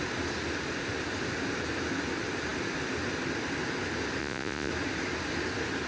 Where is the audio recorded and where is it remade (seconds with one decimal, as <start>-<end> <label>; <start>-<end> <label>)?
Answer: 0.0-4.2 recorded; 4.2-4.7 remade; 4.7-5.9 recorded